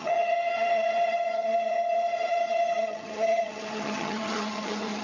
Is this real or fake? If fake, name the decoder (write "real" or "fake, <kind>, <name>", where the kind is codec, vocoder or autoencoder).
fake, vocoder, HiFi-GAN